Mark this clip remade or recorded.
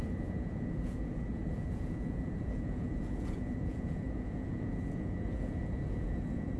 remade